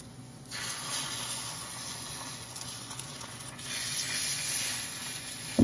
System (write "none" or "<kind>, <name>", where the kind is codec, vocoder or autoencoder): vocoder, Vocos